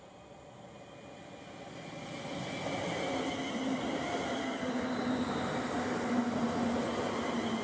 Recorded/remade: recorded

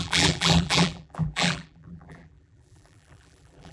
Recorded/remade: remade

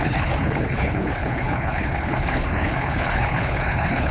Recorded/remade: remade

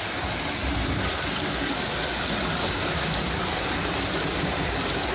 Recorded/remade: recorded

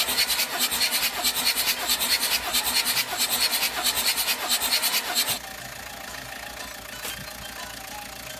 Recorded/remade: recorded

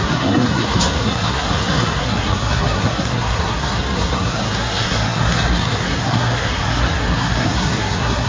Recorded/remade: remade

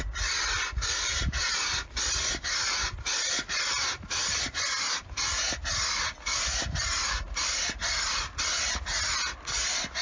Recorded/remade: recorded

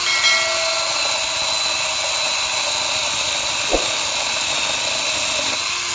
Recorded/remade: recorded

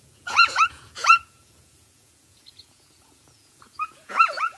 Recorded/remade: remade